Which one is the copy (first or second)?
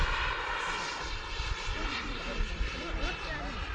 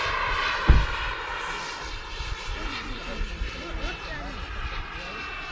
first